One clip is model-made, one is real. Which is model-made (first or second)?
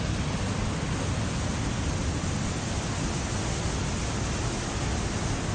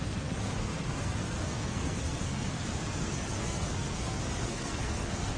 second